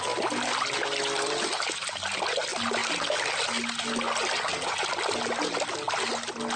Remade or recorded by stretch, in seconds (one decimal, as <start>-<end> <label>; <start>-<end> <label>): 0.0-6.6 recorded